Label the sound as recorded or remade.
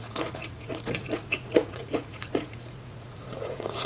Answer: remade